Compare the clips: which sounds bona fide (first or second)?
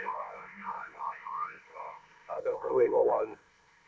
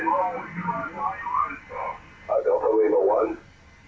second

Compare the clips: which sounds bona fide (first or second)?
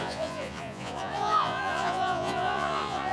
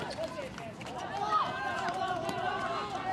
second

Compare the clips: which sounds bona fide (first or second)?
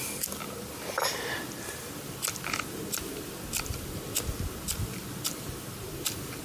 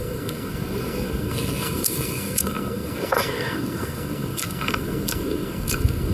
first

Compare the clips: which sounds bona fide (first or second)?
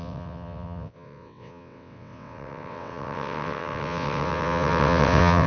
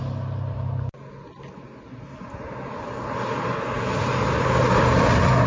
second